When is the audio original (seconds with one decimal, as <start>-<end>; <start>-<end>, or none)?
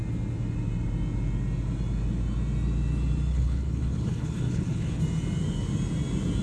0.0-3.3; 5.0-6.4